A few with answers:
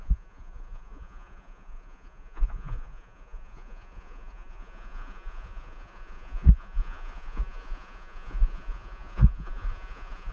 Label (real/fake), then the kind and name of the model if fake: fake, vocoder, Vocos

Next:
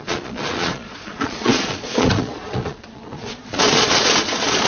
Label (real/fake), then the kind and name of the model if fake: fake, vocoder, Vocos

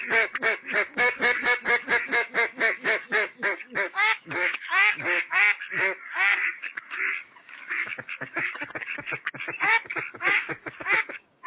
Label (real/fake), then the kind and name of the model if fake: fake, codec, DAC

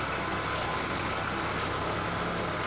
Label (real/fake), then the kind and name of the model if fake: real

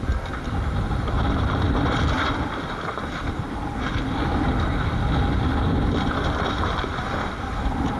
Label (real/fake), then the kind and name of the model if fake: real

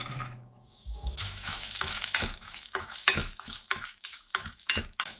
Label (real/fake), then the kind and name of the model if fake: fake, autoencoder, DAC-VAE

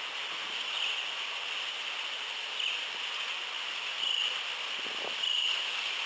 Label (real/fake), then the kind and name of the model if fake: real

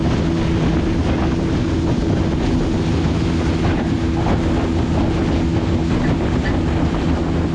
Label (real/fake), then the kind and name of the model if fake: real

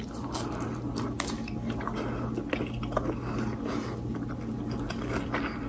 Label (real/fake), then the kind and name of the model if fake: real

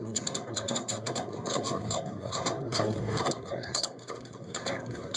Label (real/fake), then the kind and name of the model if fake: fake, codec, SNAC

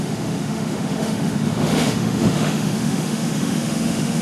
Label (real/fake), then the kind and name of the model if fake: fake, autoencoder, DAC-VAE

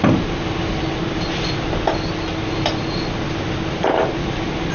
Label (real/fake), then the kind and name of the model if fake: real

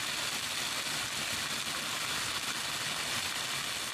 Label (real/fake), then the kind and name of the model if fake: real